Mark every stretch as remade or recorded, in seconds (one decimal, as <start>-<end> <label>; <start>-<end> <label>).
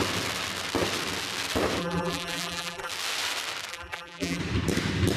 0.0-1.8 recorded; 1.8-2.9 remade; 2.9-3.7 recorded; 3.7-4.4 remade; 4.4-5.2 recorded